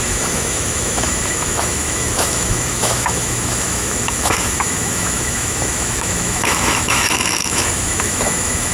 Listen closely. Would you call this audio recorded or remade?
remade